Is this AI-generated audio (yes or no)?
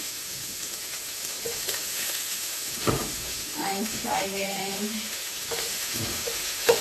yes